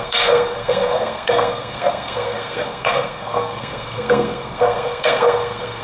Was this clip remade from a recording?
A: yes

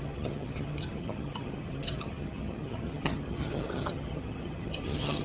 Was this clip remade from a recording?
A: yes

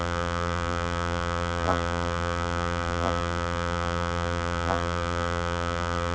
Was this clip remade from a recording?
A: yes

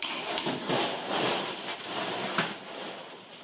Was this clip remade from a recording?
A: no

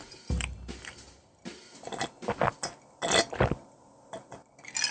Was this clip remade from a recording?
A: no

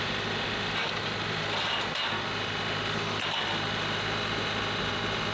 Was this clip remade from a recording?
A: no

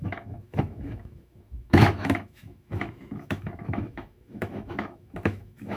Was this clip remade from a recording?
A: yes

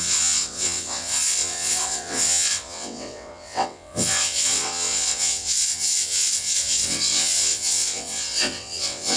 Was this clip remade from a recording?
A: yes